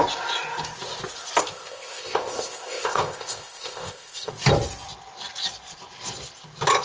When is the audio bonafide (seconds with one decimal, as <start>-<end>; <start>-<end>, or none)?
0.0-1.4; 4.3-6.8